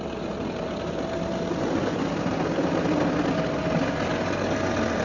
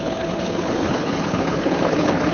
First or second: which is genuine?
first